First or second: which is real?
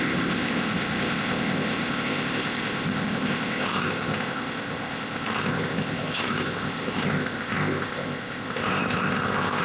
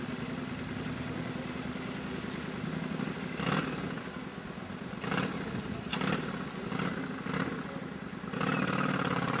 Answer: second